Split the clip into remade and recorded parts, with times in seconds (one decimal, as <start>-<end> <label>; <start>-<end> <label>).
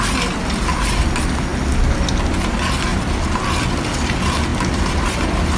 0.0-2.9 recorded; 2.9-3.4 remade; 3.4-4.5 recorded; 4.5-5.6 remade